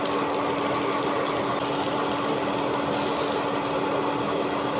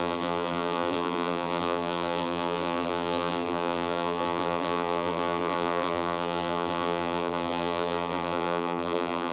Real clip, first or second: first